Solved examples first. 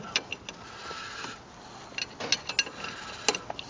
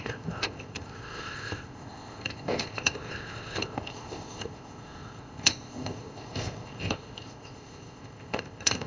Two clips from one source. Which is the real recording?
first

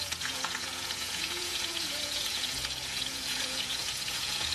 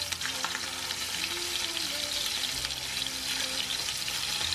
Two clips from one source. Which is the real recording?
second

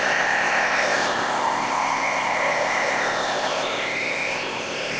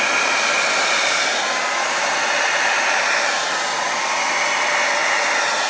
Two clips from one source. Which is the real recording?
second